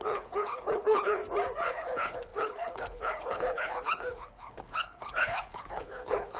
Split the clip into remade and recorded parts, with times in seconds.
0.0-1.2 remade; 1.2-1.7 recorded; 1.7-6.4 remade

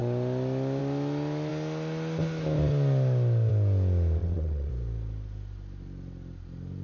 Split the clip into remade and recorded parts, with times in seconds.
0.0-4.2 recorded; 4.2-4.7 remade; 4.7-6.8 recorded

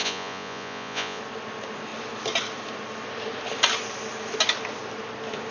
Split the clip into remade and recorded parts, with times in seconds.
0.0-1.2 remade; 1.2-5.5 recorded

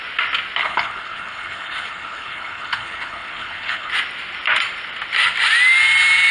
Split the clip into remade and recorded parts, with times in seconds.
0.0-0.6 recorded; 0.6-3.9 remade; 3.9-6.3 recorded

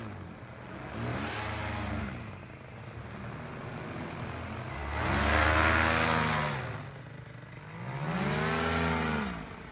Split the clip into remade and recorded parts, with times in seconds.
0.0-1.1 recorded; 1.1-2.3 remade; 2.3-9.7 recorded

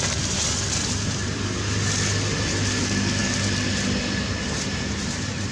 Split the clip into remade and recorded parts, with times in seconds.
0.0-5.5 recorded

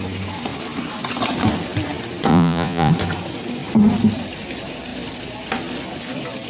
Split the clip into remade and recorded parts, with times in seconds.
0.0-2.3 recorded; 2.3-2.9 remade; 2.9-6.5 recorded

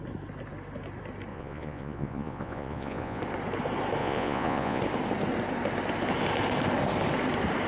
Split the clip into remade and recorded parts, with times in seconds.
0.0-1.3 recorded; 1.3-3.2 remade; 3.2-4.0 recorded; 4.0-4.8 remade; 4.8-7.7 recorded